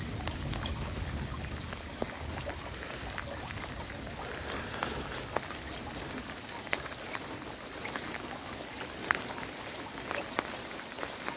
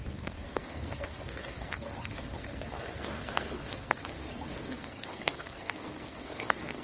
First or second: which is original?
first